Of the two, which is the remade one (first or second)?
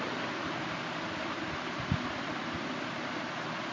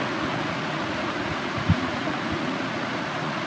second